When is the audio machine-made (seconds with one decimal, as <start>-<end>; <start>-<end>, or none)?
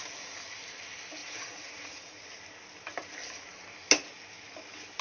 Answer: 1.2-2.2